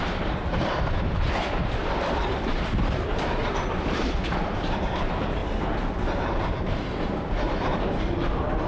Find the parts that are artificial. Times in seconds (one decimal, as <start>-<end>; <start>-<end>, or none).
0.0-5.4